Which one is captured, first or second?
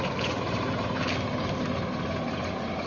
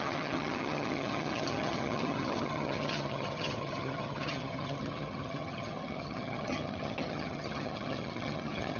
first